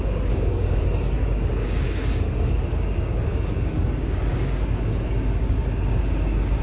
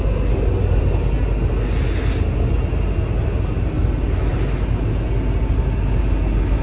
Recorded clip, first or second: second